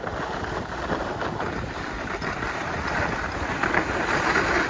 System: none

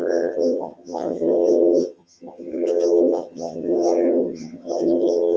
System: vocoder, HiFi-GAN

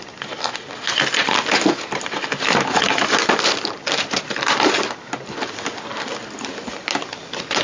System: none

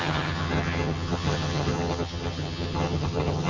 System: vocoder, HiFi-GAN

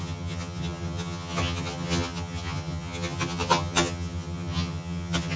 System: vocoder, HiFi-GAN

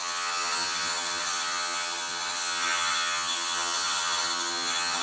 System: vocoder, HiFi-GAN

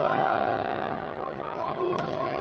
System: vocoder, HiFi-GAN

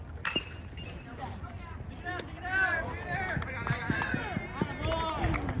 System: none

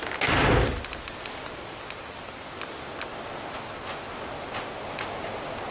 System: none